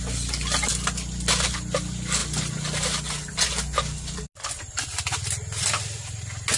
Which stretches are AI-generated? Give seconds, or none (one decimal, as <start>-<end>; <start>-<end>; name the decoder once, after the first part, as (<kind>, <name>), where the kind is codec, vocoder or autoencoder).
none